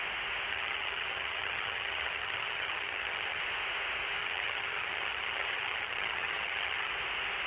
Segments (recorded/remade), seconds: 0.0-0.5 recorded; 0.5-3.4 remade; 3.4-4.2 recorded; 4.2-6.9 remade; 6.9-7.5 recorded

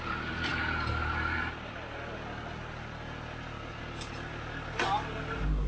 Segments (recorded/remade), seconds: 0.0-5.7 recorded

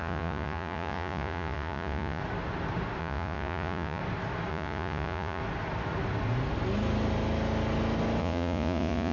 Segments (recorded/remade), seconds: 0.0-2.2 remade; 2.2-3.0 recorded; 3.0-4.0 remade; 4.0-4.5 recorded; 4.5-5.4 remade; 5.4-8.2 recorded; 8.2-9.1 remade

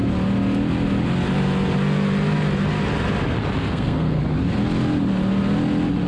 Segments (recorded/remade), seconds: 0.0-3.7 recorded; 3.7-4.2 remade; 4.2-6.1 recorded

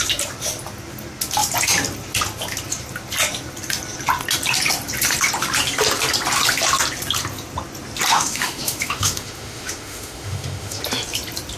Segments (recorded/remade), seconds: 0.0-8.1 recorded; 8.1-10.8 remade; 10.8-11.6 recorded

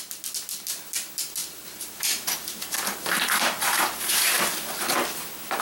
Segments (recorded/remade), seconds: 0.0-1.4 recorded; 1.4-4.4 remade; 4.4-5.6 recorded

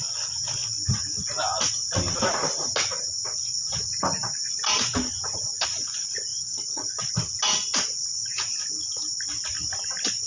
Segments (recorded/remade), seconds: 0.0-6.3 recorded; 6.3-7.1 remade; 7.1-10.3 recorded

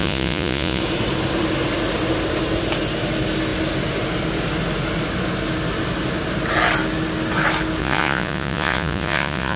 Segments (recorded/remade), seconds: 0.0-0.8 remade; 0.8-7.8 recorded; 7.8-9.6 remade